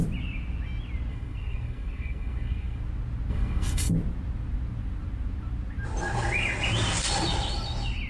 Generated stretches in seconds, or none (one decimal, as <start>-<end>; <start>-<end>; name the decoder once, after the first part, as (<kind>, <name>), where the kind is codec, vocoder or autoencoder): 1.1-2.8 (codec, SNAC); 3.3-3.9